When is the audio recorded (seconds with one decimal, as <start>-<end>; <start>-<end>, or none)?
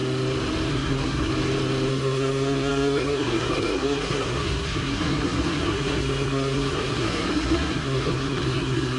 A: 0.0-0.7; 1.3-1.9